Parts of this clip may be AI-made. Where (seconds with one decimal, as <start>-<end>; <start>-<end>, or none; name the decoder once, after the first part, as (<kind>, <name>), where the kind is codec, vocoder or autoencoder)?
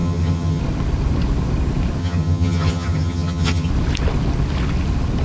0.0-0.6 (vocoder, HiFi-GAN); 2.0-3.7